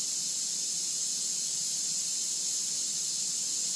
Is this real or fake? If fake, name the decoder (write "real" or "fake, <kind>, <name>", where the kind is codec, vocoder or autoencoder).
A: real